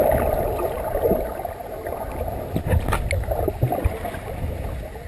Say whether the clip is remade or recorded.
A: recorded